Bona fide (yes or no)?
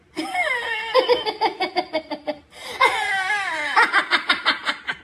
yes